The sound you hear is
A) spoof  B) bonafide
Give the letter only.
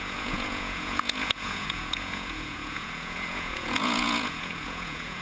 A